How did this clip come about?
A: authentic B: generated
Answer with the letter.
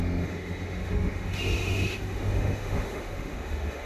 B